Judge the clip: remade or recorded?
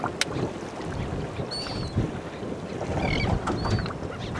recorded